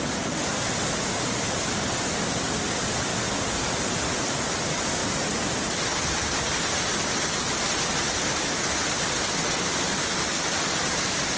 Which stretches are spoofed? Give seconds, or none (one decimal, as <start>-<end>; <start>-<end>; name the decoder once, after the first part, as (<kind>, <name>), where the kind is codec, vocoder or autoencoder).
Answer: none

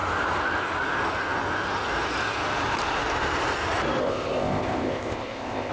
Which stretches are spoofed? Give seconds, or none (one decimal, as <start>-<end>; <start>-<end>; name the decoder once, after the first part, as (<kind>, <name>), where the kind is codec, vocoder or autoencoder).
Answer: 4.0-5.7 (codec, ZipCodec)

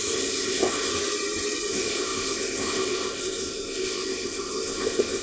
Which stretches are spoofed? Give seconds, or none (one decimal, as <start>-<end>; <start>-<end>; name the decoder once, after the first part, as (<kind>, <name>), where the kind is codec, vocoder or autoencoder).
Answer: 0.0-0.9 (codec, ZipCodec); 1.7-5.2

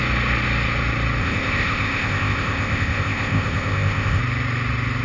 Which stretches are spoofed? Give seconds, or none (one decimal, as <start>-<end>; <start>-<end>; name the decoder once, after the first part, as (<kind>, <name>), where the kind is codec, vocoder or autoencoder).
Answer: 1.2-4.2 (codec, ZipCodec)

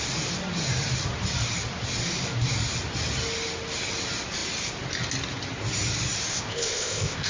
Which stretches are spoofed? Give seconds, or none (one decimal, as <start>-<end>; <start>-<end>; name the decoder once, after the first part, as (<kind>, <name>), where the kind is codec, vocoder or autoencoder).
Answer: 6.3-7.3 (codec, ZipCodec)